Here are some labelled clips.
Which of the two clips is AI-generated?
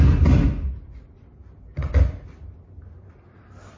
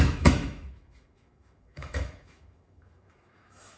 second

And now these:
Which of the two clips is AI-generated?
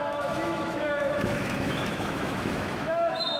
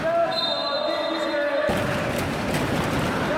first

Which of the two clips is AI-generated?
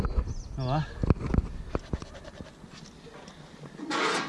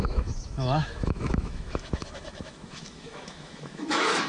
second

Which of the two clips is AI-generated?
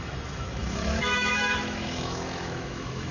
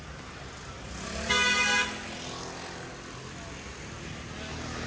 first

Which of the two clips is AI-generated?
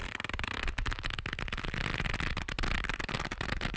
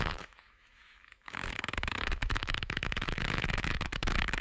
second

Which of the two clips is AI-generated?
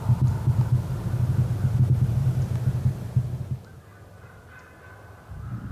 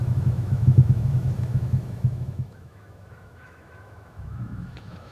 second